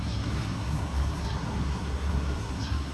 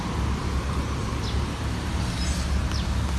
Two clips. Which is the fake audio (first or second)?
first